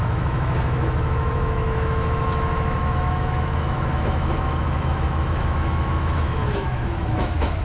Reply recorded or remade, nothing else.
remade